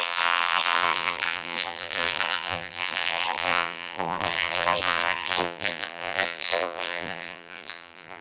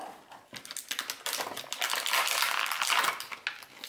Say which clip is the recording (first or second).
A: second